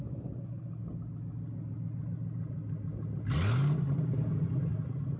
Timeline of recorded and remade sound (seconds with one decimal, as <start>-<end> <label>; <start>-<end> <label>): 0.0-5.2 recorded